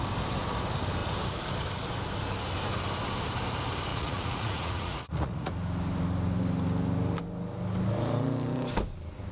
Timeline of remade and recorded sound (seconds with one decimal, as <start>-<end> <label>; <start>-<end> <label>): 0.0-3.9 recorded; 3.9-5.5 remade; 5.5-9.3 recorded